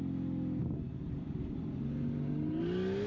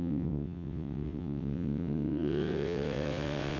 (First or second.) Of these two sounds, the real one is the first